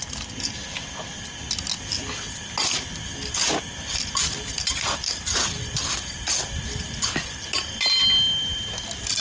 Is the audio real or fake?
real